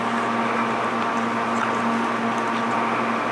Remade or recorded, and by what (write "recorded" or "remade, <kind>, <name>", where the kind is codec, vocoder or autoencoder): recorded